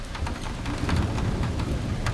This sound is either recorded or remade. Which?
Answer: recorded